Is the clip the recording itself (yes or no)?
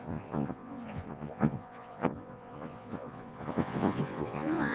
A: no